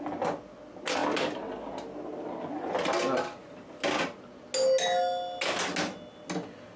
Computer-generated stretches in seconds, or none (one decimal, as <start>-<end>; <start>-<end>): none